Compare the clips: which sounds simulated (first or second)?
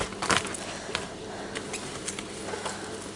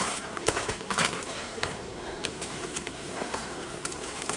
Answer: second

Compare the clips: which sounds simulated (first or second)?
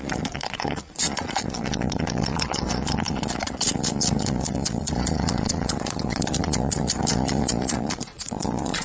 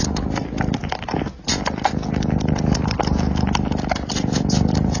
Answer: first